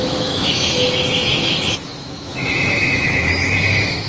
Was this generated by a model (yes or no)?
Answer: yes